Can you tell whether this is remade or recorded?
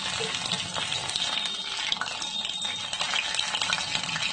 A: recorded